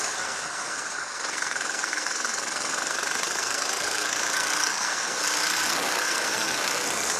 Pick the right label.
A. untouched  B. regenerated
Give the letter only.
B